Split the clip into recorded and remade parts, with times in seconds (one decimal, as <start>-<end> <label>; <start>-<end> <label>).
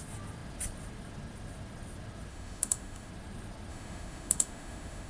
0.0-2.3 recorded; 2.3-3.1 remade; 3.1-3.7 recorded; 3.7-5.1 remade